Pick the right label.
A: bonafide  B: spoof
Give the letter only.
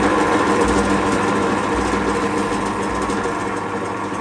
A